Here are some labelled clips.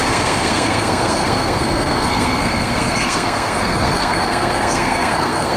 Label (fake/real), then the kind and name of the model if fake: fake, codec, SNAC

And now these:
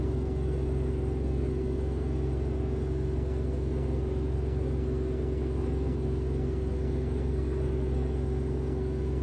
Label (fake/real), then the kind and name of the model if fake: fake, codec, SNAC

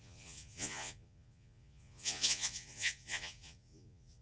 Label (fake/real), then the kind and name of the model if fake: fake, vocoder, Vocos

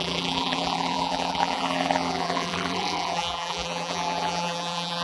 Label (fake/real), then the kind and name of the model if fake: fake, vocoder, BigVGAN v2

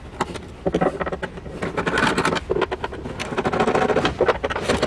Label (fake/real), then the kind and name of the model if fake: real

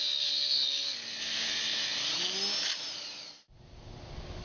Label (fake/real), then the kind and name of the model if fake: real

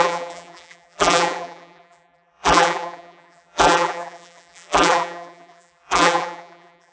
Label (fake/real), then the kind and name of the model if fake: fake, vocoder, BigVGAN v2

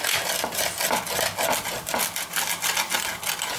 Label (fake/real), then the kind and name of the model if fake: real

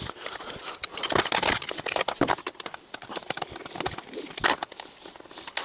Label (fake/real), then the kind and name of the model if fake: real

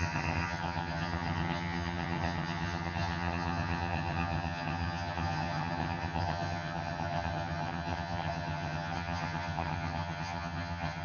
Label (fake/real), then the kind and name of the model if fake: fake, vocoder, HiFi-GAN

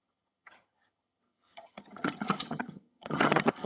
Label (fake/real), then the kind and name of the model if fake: fake, vocoder, HiFi-GAN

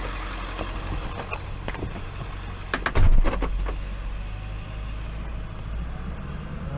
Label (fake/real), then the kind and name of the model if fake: real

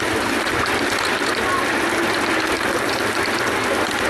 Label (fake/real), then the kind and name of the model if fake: fake, vocoder, BigVGAN v2